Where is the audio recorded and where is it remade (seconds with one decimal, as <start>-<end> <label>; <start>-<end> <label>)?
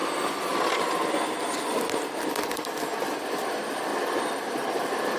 0.0-5.2 recorded